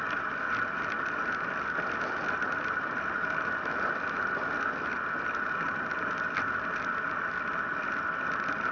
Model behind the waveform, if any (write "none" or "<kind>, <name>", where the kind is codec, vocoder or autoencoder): none